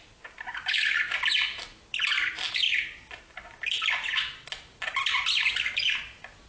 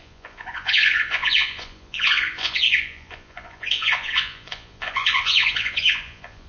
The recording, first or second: first